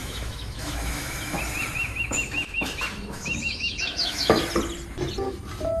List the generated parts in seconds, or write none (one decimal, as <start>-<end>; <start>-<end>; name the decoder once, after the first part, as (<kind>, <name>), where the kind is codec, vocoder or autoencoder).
0.0-1.4 (autoencoder, DAC-VAE); 1.8-4.4